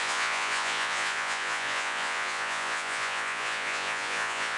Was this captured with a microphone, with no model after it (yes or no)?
no